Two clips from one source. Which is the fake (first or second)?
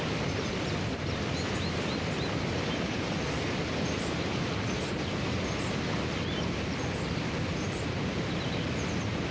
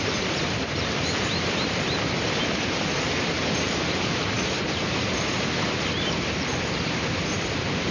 second